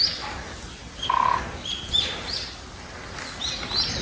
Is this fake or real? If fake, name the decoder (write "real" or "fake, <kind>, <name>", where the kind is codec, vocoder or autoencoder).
real